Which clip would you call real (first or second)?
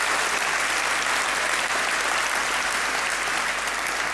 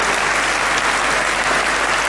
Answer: second